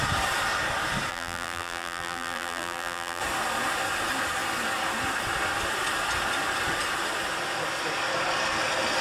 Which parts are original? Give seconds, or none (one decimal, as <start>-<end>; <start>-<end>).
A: 0.0-1.1; 3.2-9.0